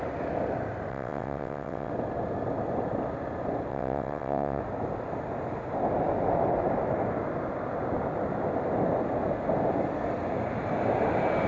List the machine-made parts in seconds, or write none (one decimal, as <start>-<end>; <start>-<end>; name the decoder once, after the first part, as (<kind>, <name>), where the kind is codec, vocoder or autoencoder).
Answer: 0.9-1.9 (vocoder, WaveNeXt); 3.7-4.6